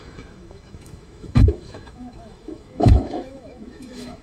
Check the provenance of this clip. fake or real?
fake